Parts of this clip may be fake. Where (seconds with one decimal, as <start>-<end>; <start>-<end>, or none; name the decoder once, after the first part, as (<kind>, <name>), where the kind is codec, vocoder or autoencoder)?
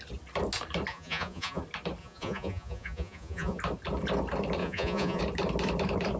0.9-1.6 (vocoder, Vocos); 2.0-3.6; 4.6-5.2